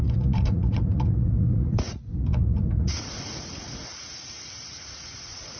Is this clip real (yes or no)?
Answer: no